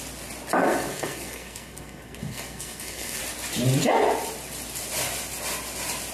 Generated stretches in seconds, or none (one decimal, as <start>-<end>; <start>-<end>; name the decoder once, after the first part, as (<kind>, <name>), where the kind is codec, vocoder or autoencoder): 0.6-3.2 (codec, SNAC)